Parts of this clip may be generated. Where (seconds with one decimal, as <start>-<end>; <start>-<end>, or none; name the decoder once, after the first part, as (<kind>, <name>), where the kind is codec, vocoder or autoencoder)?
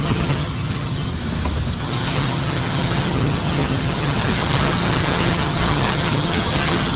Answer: 0.0-1.1 (vocoder, HiFi-GAN); 1.8-7.0